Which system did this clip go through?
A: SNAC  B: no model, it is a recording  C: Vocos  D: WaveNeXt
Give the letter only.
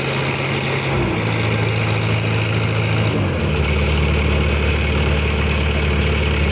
B